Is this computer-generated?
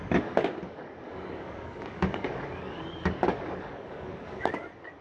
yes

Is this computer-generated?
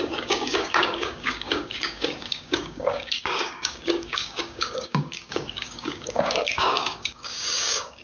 yes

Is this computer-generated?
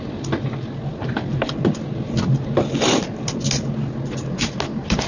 no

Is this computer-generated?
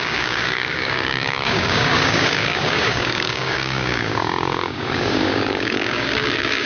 yes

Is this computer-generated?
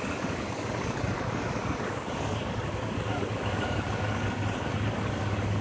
yes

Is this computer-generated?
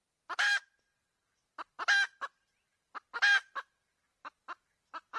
no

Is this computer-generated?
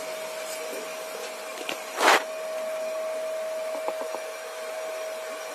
no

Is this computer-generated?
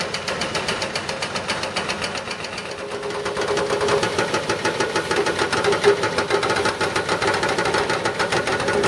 no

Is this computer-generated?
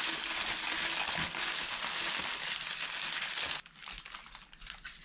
no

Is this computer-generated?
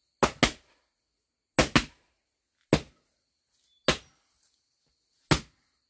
no